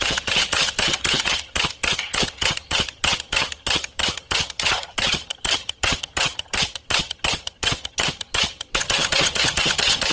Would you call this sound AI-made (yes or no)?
yes